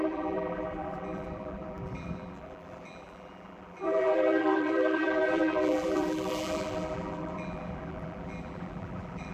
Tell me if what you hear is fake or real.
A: fake